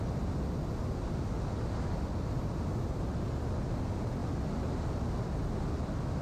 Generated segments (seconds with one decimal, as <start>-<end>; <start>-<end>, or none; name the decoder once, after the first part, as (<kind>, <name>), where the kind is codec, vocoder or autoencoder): none